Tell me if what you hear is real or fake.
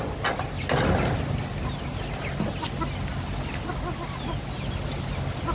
real